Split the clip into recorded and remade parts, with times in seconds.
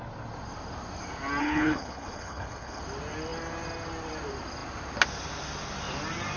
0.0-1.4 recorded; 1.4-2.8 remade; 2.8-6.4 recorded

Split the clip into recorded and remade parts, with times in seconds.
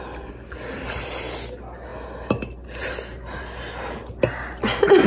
0.0-5.1 recorded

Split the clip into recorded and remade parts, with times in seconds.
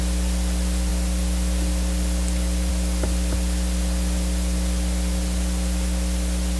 0.0-6.6 recorded